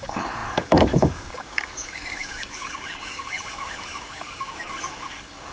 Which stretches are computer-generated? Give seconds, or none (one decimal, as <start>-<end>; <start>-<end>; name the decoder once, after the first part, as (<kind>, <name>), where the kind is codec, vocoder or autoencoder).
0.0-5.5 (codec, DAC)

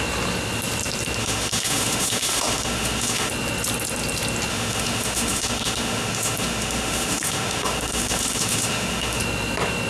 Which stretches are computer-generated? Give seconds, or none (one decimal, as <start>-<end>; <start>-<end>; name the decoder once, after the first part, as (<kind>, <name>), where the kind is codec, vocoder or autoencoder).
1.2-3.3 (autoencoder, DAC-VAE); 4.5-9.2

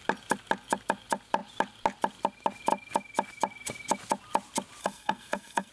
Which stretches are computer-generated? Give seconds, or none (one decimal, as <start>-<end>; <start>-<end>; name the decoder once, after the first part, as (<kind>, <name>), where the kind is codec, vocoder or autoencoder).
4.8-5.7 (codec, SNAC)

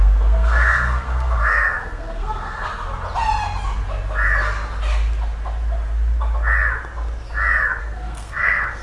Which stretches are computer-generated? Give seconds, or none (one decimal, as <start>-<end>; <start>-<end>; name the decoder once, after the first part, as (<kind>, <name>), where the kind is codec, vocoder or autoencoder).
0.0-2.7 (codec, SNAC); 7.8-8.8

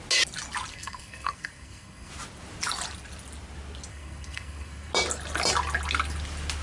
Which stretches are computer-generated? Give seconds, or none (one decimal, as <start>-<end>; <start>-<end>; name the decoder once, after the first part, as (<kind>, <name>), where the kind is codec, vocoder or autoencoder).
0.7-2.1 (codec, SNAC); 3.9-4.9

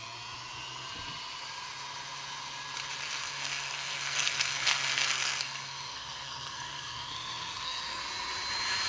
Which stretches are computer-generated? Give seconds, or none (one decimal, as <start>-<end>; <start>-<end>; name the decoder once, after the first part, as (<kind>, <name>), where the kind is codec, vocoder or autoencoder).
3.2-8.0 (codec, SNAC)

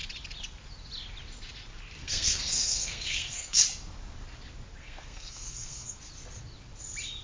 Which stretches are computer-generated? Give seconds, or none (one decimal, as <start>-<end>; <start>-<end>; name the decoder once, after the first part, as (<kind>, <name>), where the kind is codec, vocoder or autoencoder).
2.0-3.6 (codec, SNAC); 4.8-6.0